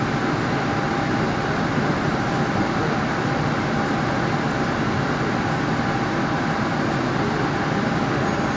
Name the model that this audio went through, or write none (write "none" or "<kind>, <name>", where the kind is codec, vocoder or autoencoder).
none